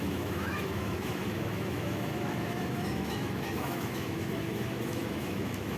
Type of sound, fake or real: fake